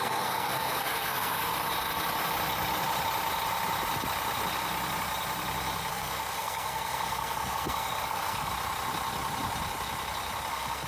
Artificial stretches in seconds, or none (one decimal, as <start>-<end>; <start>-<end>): 0.0-1.5; 5.9-8.5; 10.5-10.9